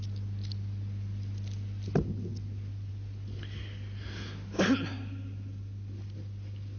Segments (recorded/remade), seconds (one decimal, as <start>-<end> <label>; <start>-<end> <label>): 0.0-6.8 recorded